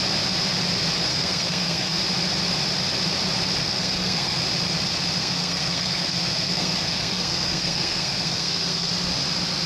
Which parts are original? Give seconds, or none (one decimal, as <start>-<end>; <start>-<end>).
0.0-1.1; 2.0-3.6; 4.4-5.2; 8.9-9.7